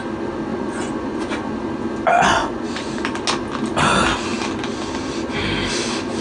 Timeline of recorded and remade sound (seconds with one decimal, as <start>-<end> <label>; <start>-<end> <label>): 0.0-0.5 recorded; 0.5-1.5 remade; 1.5-2.4 recorded; 2.4-3.0 remade; 3.0-6.2 recorded